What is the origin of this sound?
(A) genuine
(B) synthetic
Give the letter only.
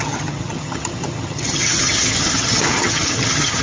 B